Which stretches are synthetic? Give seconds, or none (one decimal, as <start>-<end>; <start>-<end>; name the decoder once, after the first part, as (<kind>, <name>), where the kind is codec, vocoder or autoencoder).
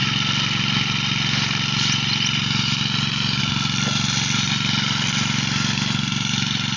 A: none